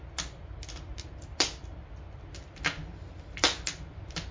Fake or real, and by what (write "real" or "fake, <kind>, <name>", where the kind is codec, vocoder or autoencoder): real